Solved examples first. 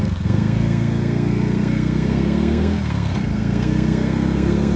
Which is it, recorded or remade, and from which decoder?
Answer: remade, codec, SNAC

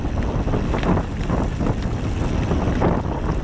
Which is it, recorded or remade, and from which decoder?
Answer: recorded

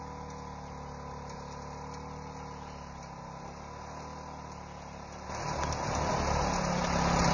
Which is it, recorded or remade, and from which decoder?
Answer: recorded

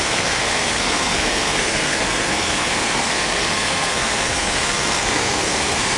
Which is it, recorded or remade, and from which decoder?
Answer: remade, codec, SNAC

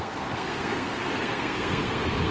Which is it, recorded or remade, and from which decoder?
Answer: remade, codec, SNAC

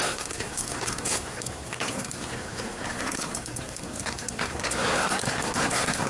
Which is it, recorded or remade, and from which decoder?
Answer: remade, codec, SNAC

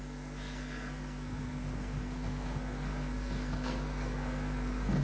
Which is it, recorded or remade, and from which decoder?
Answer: remade, codec, SNAC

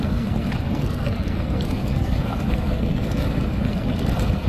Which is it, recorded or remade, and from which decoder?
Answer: remade, codec, SNAC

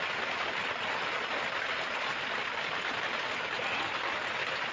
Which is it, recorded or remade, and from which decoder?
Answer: recorded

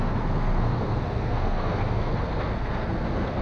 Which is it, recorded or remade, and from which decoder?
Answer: remade, codec, SNAC